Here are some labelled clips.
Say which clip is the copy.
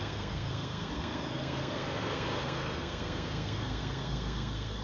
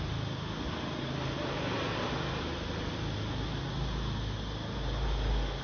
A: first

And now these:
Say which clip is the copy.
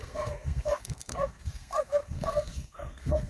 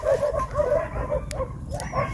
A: first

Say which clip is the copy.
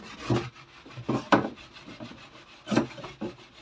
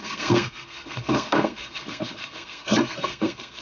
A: second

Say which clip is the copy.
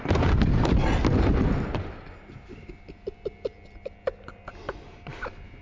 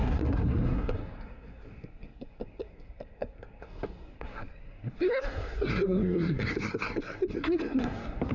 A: second